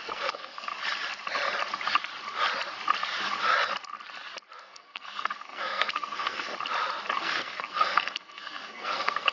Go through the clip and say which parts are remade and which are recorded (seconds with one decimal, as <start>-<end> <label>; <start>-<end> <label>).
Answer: 0.0-0.7 remade; 0.7-4.6 recorded; 4.6-6.5 remade; 6.5-7.2 recorded; 7.2-9.3 remade

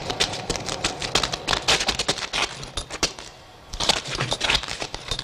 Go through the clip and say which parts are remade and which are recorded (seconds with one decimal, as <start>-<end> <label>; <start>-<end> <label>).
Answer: 0.0-1.0 remade; 1.0-3.0 recorded; 3.0-5.2 remade

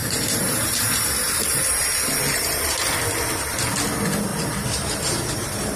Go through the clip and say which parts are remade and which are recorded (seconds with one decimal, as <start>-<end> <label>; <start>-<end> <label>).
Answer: 0.0-2.9 remade; 2.9-4.3 recorded; 4.3-5.8 remade